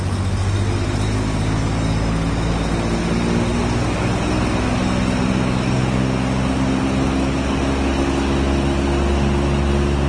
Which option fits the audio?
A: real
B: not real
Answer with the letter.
A